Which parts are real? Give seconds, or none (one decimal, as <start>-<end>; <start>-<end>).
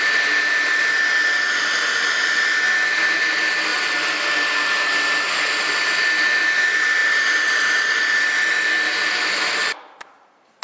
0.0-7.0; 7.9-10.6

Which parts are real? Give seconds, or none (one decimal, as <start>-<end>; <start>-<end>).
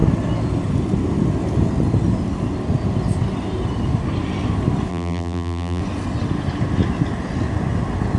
0.0-4.9; 5.8-8.2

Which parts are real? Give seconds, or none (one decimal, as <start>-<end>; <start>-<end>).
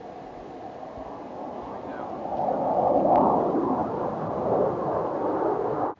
0.0-6.0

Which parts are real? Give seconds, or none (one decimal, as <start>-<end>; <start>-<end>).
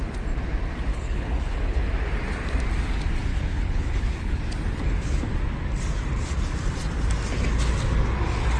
0.0-0.9; 1.9-3.3; 4.4-8.6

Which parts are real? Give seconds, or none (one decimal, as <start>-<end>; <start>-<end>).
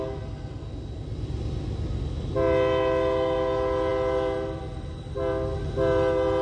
0.0-6.4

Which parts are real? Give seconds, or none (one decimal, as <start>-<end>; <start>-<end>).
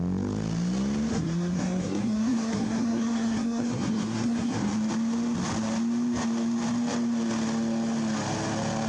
0.0-1.1; 4.7-8.9